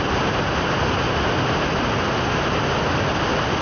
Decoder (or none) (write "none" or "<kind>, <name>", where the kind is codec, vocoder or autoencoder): none